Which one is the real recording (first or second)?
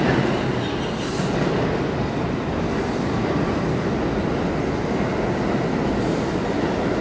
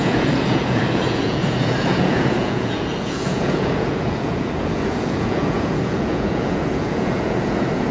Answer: first